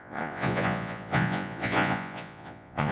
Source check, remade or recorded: remade